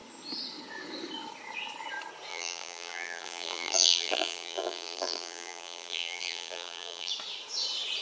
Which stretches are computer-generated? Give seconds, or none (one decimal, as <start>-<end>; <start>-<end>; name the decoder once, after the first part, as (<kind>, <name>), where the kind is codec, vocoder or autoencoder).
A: 2.3-7.1 (vocoder, BigVGAN v2)